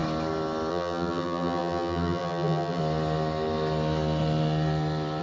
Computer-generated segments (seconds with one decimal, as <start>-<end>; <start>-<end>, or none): 0.7-2.8